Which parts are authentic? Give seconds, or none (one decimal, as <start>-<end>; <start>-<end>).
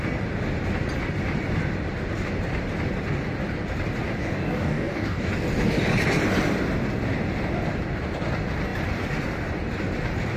0.0-4.2; 5.3-10.4